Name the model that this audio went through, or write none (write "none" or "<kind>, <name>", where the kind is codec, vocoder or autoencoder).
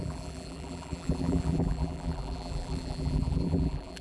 vocoder, BigVGAN v2